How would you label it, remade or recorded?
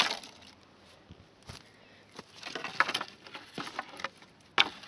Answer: recorded